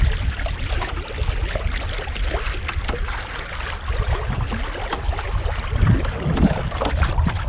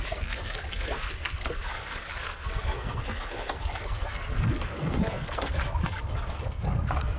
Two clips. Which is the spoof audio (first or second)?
second